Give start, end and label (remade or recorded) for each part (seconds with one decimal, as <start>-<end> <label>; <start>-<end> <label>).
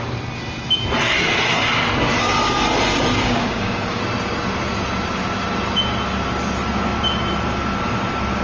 0.0-3.2 recorded; 3.2-4.0 remade; 4.0-8.4 recorded